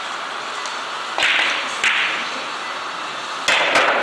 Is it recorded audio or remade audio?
recorded